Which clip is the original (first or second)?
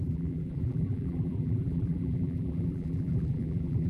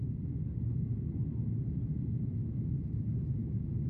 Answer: second